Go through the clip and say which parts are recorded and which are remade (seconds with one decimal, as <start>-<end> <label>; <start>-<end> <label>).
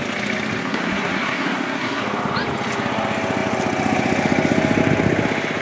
0.0-0.6 recorded; 0.6-2.0 remade; 2.0-5.6 recorded